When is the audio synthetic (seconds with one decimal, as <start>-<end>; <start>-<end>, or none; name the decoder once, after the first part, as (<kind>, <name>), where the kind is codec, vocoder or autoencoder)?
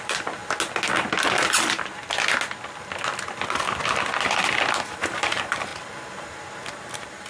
0.0-0.4 (vocoder, BigVGAN v2); 4.8-5.7; 6.7-7.3